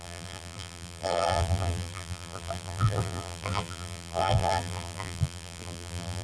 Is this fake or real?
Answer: fake